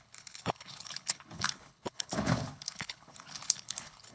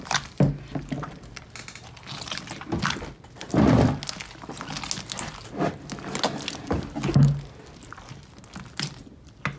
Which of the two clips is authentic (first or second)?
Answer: second